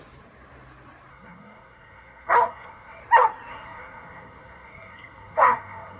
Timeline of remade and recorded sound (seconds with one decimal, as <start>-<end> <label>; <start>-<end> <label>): 0.0-1.1 recorded; 1.1-3.0 remade; 3.0-3.5 recorded; 3.5-6.0 remade